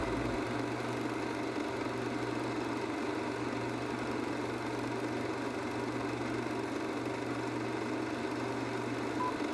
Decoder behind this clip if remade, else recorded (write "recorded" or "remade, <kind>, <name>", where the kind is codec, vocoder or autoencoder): recorded